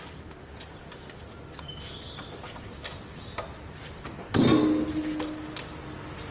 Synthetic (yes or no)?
no